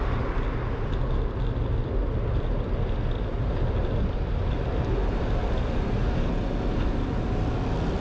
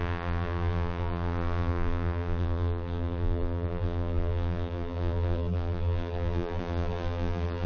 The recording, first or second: first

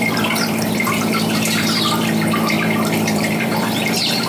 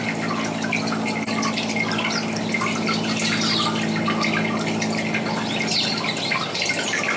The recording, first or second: second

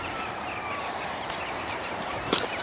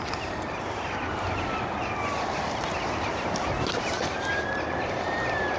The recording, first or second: second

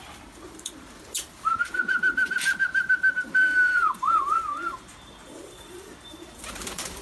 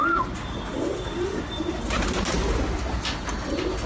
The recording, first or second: second